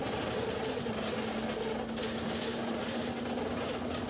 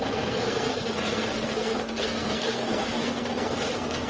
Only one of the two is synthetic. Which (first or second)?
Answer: second